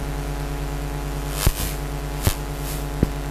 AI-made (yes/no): no